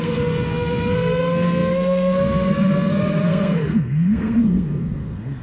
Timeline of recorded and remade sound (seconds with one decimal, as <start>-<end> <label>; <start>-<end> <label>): 0.0-5.4 remade